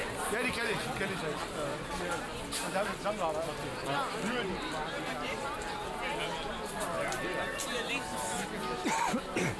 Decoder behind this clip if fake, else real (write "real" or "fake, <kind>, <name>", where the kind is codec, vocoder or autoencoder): real